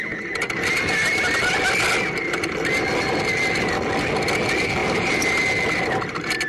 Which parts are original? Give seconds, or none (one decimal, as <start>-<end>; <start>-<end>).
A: 0.0-4.8; 5.4-6.5